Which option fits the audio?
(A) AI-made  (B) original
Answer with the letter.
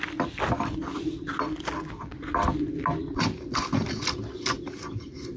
B